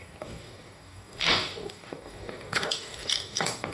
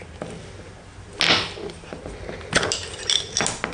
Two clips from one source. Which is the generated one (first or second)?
first